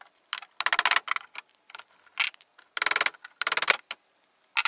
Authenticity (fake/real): real